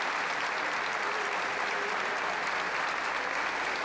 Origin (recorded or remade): recorded